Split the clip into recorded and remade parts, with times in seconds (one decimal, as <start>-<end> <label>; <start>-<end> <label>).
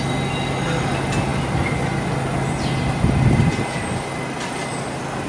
0.0-5.3 recorded